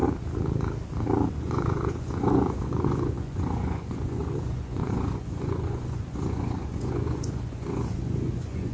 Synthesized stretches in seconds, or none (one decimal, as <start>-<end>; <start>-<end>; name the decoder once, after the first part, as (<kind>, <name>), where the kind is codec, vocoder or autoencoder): 1.3-8.7 (vocoder, Vocos)